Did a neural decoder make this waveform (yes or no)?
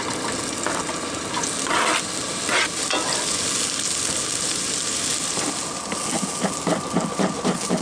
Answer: no